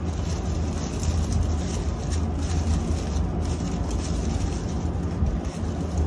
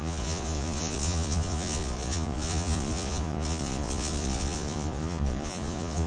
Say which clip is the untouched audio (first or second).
first